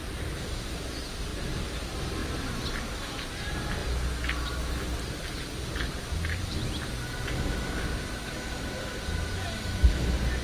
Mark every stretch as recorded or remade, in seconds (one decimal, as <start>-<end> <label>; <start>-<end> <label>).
0.0-1.3 recorded; 1.3-1.8 remade; 1.8-10.4 recorded